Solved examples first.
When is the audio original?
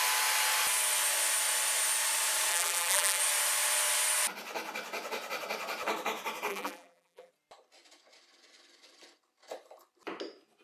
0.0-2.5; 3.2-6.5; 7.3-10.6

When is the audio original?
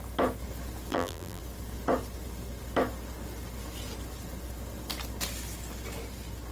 0.0-0.9; 1.4-6.5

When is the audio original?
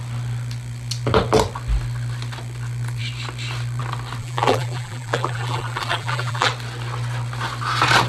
0.0-4.2; 6.5-8.1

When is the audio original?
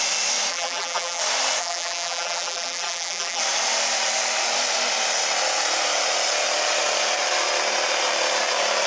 0.0-0.5; 1.2-1.6; 3.4-8.9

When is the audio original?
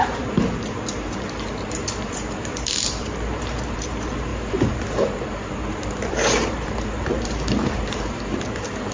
none